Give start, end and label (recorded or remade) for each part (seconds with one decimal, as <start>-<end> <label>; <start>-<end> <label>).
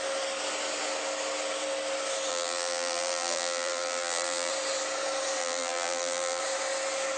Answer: 0.0-2.3 recorded; 2.3-4.5 remade; 4.5-5.4 recorded; 5.4-6.4 remade; 6.4-7.2 recorded